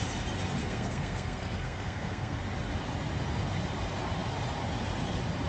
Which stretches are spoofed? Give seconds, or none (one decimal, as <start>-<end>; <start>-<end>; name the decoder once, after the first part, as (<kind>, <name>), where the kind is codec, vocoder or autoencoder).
0.6-2.4 (codec, SNAC)